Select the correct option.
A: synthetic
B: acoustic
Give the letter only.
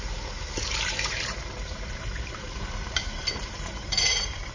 A